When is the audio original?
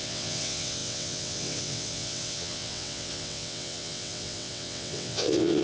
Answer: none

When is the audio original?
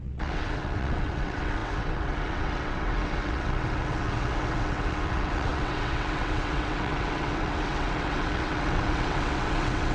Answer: none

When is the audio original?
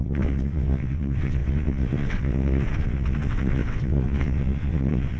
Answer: none